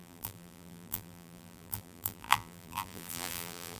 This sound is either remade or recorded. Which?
remade